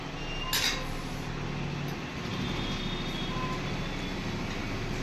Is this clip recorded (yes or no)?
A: yes